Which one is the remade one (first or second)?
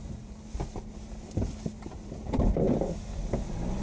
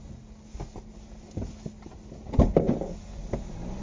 first